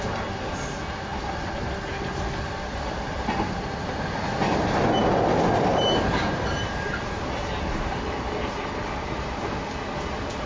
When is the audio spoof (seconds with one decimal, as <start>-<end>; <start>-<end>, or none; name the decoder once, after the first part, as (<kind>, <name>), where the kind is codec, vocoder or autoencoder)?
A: 5.7-8.3 (vocoder, BigVGAN v2)